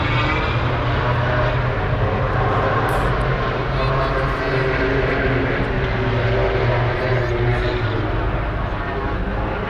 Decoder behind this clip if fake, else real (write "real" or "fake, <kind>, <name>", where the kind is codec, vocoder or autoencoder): real